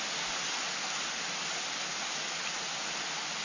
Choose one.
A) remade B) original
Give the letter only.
B